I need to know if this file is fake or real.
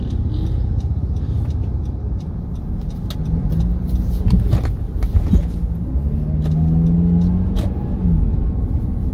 real